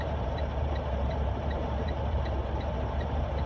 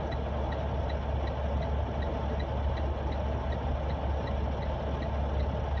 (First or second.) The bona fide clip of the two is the second